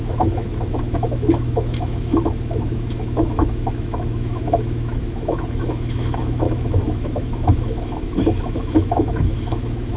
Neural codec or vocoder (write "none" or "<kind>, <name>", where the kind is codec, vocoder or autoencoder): autoencoder, DAC-VAE